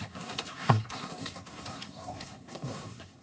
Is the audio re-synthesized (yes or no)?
yes